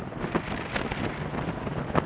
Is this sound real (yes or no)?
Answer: yes